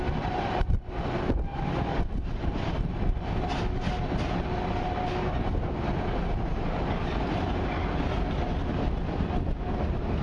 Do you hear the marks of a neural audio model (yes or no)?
no